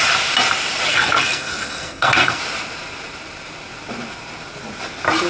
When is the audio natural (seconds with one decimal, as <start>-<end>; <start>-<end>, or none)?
0.0-0.9; 2.4-5.3